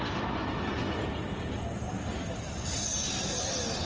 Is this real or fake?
real